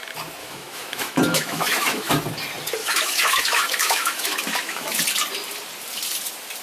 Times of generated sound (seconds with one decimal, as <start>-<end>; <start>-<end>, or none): 0.4-2.1; 2.8-5.0